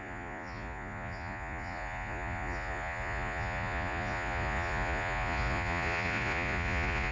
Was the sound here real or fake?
fake